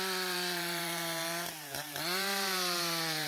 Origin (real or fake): fake